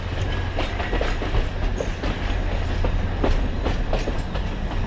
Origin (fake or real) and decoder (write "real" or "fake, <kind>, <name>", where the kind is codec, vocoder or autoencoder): real